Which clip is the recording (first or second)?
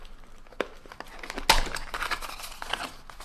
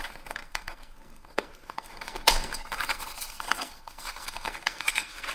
first